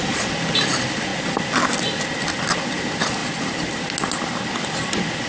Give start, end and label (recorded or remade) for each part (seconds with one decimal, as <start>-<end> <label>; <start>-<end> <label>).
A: 0.0-5.3 recorded